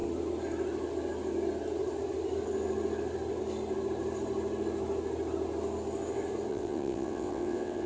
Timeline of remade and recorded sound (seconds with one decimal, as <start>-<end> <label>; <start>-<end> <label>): 0.0-6.5 recorded; 6.5-7.9 remade